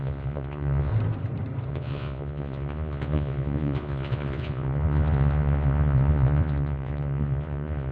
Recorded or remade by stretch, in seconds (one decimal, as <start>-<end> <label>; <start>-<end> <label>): 0.0-0.9 remade; 0.9-1.7 recorded; 1.7-7.9 remade